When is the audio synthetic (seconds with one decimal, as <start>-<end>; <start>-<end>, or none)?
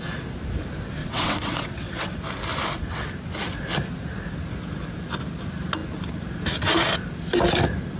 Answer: 1.0-2.1